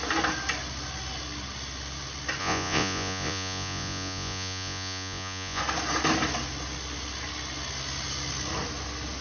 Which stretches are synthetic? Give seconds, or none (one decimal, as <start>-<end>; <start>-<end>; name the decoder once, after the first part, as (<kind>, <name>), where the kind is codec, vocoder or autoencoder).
2.4-5.6 (vocoder, Vocos)